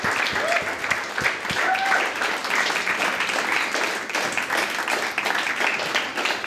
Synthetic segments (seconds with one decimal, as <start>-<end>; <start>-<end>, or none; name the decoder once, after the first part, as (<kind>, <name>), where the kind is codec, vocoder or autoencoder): none